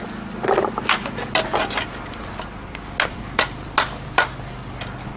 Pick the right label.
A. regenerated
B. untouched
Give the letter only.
B